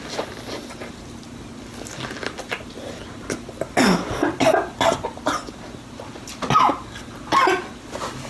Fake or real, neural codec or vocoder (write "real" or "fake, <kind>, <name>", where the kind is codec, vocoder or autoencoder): real